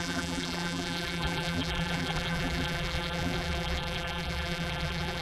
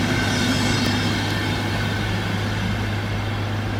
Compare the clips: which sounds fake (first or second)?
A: first